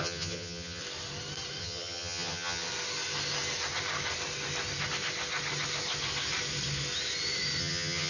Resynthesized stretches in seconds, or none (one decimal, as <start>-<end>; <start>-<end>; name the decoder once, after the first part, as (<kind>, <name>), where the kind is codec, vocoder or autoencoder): 0.0-0.8 (vocoder, HiFi-GAN); 1.6-2.7; 7.6-8.1